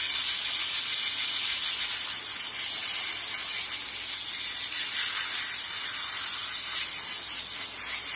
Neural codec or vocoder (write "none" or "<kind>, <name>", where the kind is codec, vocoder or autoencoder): none